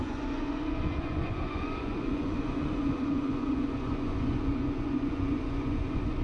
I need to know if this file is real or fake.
fake